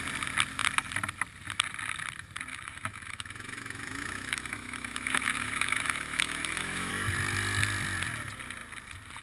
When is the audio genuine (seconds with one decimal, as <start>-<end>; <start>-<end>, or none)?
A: 0.0-2.5; 6.9-9.2